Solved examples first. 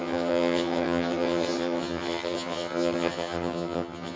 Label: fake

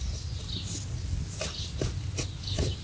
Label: real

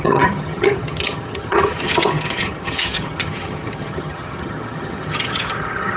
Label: fake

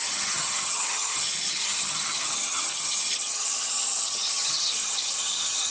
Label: fake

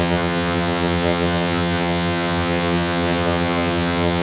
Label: fake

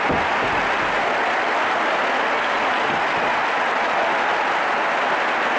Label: real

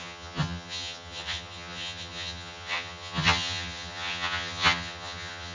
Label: fake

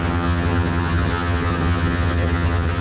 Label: fake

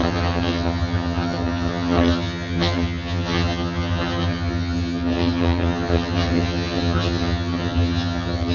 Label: fake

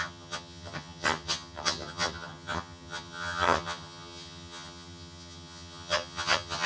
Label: fake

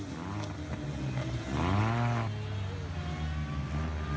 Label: real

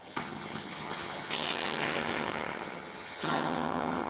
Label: fake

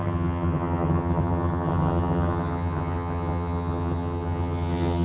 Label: fake